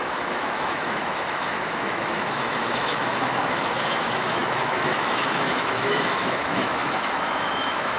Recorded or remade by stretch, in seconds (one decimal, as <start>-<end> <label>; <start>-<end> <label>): 0.0-8.0 remade